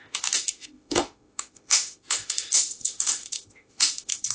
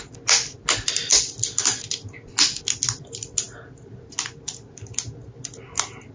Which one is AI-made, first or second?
first